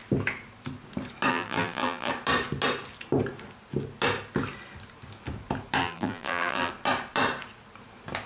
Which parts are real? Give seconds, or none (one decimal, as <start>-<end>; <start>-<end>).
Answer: 0.0-1.3; 2.1-5.8; 6.7-8.3